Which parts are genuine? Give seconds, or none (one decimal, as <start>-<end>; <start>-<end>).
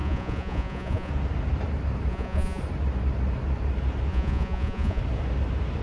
1.1-2.1; 2.6-4.1; 5.0-5.8